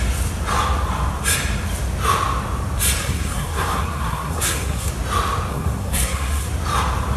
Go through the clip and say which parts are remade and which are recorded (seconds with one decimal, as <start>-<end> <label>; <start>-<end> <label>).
0.0-3.0 recorded; 3.0-4.9 remade; 4.9-5.5 recorded; 5.5-6.5 remade; 6.5-7.2 recorded